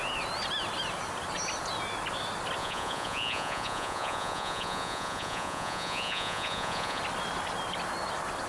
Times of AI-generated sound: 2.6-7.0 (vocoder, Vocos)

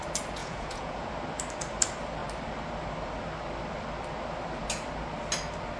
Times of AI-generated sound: 0.4-1.1 (vocoder, Vocos)

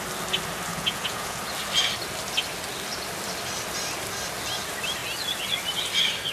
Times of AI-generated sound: 0.7-1.4 (vocoder, Vocos)

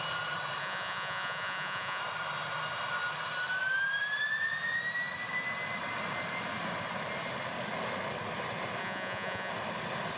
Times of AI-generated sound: 0.6-2.0 (vocoder, Vocos); 8.8-9.5

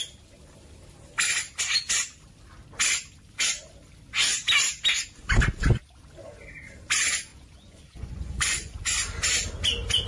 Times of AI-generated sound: 7.3-8.8 (vocoder, Vocos)

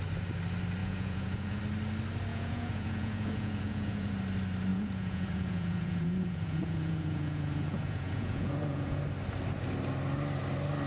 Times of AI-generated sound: 0.8-1.6 (vocoder, Vocos); 2.3-4.1; 4.7-9.0

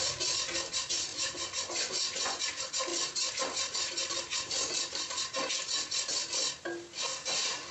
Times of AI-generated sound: 1.1-2.4 (vocoder, Vocos)

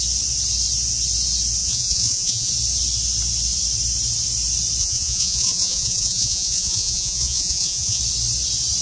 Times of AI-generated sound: 1.6-2.5 (vocoder, Vocos); 4.8-8.0